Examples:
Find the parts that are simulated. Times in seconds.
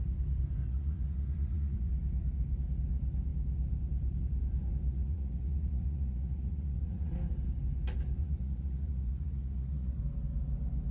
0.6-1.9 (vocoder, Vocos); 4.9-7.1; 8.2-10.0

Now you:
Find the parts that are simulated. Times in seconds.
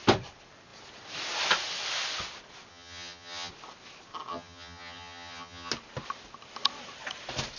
2.7-3.5 (vocoder, HiFi-GAN); 4.3-5.7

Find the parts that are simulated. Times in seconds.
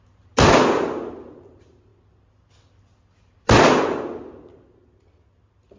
none